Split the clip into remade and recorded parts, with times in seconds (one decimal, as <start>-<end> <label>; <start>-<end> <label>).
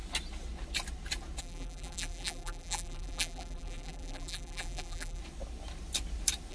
0.0-1.4 recorded; 1.4-5.2 remade; 5.2-6.5 recorded